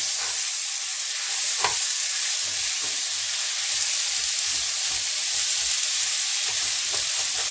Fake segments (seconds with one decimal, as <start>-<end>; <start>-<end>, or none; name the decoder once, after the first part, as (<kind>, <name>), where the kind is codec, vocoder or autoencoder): none